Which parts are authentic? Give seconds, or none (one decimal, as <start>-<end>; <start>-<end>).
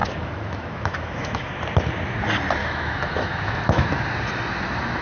1.6-2.6; 3.9-5.0